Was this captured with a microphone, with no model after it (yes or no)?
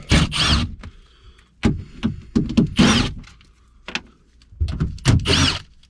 yes